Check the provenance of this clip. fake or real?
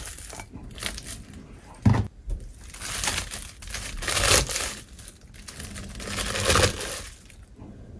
real